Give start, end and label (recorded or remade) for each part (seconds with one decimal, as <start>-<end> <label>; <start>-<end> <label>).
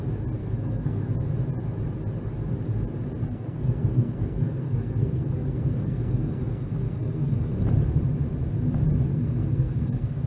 0.0-0.4 recorded; 0.4-1.1 remade; 1.1-3.2 recorded; 3.2-7.6 remade; 7.6-9.1 recorded; 9.1-10.3 remade